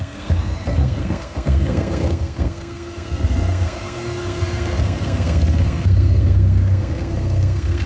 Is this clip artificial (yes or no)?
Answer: yes